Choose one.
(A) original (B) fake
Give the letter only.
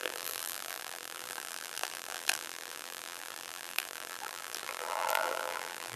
B